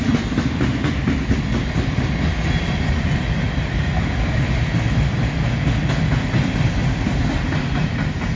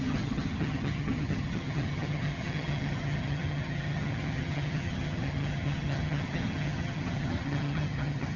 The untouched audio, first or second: first